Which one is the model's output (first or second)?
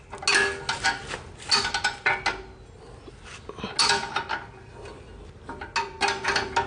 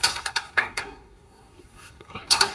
second